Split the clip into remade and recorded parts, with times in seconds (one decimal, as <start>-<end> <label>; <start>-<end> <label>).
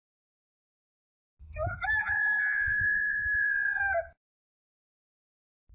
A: 0.0-2.0 recorded; 2.0-3.8 remade; 3.8-5.7 recorded